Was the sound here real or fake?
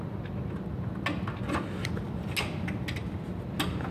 real